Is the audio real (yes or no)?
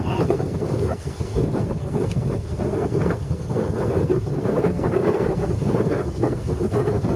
no